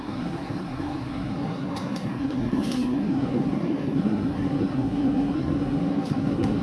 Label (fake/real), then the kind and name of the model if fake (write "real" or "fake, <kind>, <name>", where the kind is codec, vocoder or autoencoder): fake, codec, SNAC